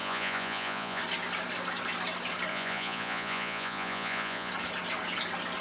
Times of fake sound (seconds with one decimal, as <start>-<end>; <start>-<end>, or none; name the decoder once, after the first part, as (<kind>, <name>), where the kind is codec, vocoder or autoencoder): 0.0-1.0 (vocoder, Vocos); 2.5-4.5